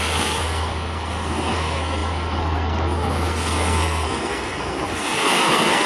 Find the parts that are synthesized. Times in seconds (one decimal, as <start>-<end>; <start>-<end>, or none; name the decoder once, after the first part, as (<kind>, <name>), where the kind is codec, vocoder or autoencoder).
0.0-5.9 (codec, SNAC)